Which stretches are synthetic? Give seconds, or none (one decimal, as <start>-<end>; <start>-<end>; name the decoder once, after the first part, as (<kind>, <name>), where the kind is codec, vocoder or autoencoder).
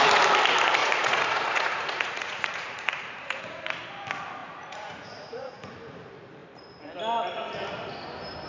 0.8-3.6 (vocoder, Vocos); 4.4-5.7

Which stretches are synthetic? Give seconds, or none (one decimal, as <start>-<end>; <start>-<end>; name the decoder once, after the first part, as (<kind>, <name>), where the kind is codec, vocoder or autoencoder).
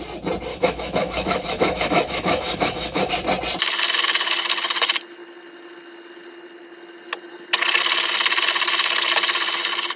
0.5-3.1 (autoencoder, DAC-VAE)